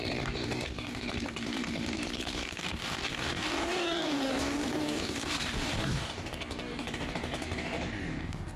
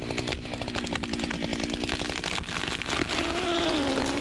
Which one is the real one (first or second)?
second